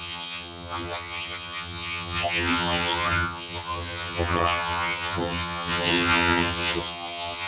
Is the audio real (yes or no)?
no